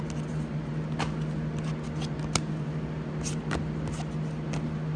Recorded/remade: recorded